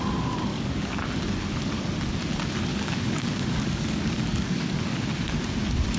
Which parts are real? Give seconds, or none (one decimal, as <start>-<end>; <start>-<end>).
0.0-0.5; 1.1-2.7; 5.0-6.0